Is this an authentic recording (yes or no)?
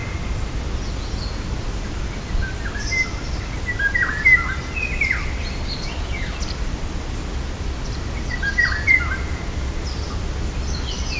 yes